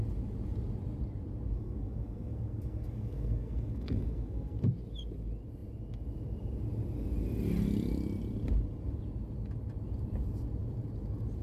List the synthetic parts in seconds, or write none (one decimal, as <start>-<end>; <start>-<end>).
1.6-4.6